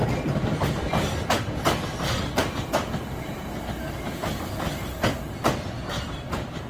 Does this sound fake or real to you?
real